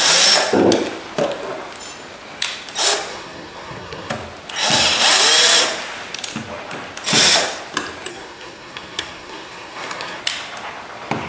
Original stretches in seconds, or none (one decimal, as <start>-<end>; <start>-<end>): 0.0-3.1; 4.1-8.1; 10.2-11.3